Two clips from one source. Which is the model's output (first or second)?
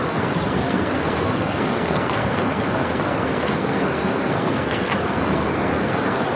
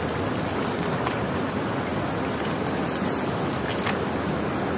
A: first